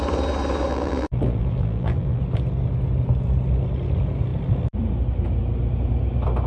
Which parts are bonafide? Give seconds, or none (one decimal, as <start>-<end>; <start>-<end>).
0.0-0.7; 2.2-6.5